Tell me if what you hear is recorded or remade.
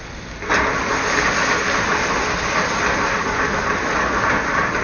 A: recorded